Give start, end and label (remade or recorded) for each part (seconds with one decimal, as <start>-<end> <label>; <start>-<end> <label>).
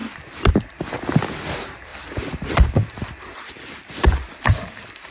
0.0-1.9 recorded; 1.9-5.1 remade